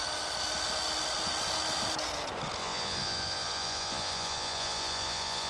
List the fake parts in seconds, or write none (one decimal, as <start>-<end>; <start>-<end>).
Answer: 2.6-5.5